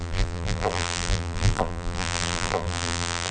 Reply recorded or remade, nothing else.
remade